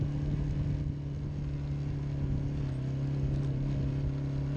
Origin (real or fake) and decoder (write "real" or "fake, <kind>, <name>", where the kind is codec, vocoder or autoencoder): real